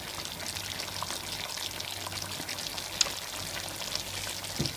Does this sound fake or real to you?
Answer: real